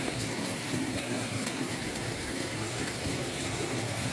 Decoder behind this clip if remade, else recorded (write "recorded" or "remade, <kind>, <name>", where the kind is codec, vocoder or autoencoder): remade, codec, SNAC